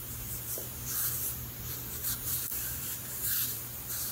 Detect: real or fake fake